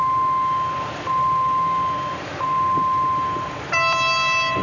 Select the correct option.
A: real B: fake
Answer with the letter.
A